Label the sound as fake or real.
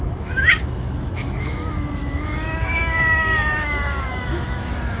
fake